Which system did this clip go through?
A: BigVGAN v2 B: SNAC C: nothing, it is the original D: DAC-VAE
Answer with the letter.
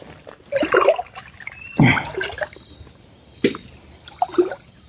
C